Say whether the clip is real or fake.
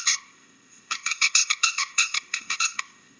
fake